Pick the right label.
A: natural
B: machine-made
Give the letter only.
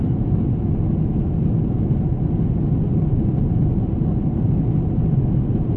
A